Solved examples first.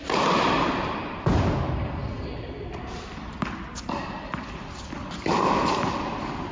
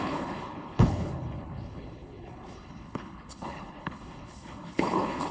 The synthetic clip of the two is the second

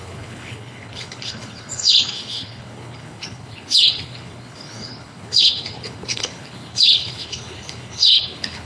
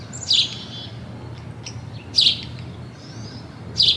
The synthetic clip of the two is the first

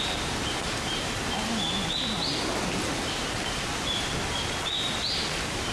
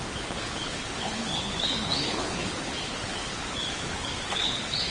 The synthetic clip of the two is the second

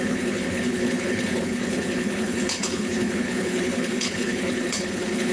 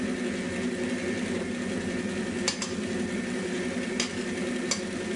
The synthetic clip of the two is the first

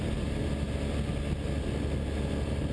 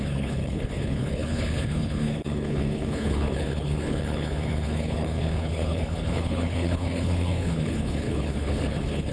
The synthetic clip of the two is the second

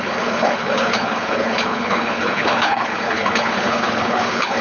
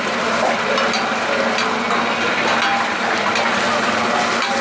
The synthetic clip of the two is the first